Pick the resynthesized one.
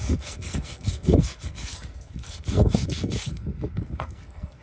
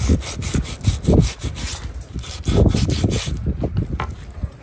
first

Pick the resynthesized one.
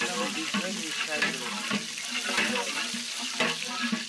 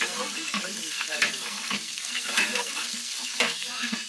second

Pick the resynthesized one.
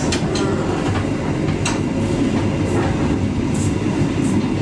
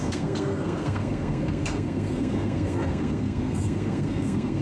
second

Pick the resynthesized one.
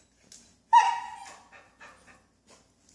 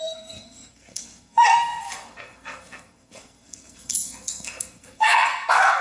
second